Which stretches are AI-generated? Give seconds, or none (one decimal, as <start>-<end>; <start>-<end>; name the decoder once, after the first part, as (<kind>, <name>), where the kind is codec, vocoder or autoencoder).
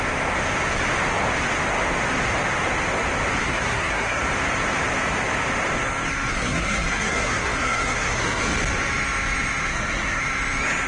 3.4-4.2 (codec, SNAC); 6.3-8.4; 9.7-10.2